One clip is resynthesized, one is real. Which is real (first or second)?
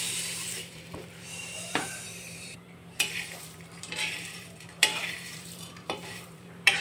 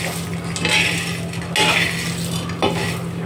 second